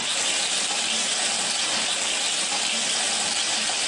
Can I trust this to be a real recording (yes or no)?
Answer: yes